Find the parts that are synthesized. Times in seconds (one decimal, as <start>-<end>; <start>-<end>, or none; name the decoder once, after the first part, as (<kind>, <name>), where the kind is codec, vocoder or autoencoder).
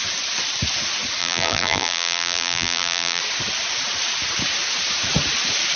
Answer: 1.2-3.2 (vocoder, BigVGAN v2)